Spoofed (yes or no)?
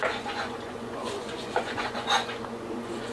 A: yes